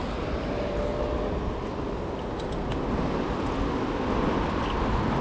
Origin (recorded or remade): recorded